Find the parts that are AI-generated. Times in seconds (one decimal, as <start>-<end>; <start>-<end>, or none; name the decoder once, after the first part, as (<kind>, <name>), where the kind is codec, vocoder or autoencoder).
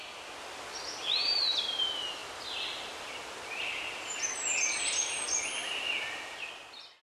5.6-6.5 (vocoder, BigVGAN v2)